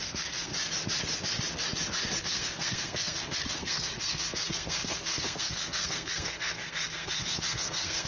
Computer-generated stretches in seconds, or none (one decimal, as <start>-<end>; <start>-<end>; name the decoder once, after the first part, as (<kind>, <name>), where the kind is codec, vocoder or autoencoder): 0.0-0.5 (codec, SNAC); 2.2-8.1